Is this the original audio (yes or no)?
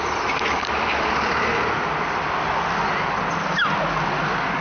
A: yes